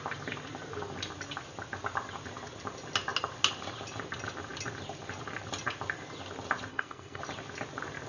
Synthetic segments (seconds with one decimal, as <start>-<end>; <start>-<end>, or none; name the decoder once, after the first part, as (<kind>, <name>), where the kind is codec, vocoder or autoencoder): 6.7-7.2 (codec, SNAC)